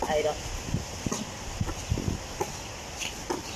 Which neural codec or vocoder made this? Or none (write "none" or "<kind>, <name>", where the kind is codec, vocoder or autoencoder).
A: none